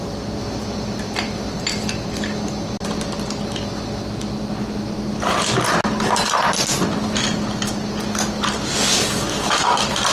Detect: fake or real real